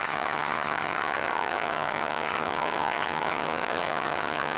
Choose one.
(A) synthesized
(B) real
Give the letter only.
A